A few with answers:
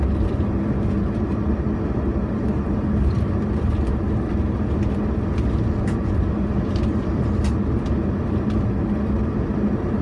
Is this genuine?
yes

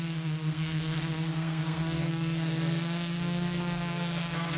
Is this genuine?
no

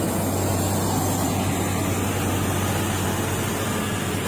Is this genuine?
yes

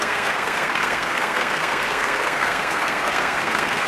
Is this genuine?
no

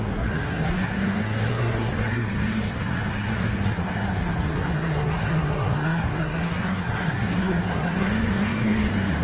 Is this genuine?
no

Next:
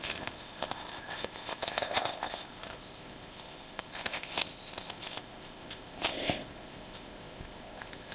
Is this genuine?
no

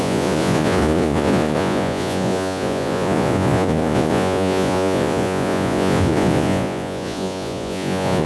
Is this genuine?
no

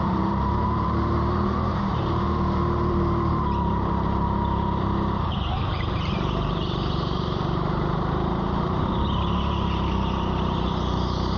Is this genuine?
no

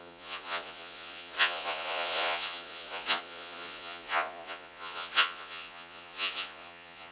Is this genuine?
no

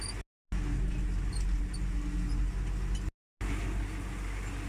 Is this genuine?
yes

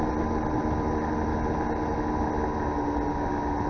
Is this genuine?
yes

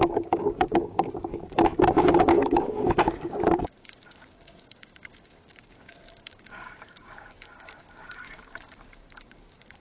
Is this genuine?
no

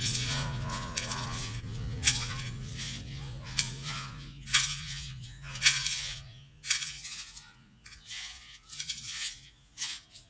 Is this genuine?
no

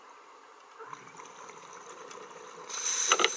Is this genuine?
yes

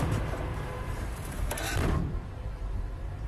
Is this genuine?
no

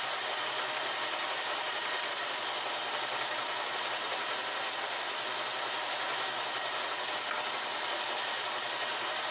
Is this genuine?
yes